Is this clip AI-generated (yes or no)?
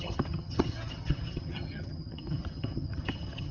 yes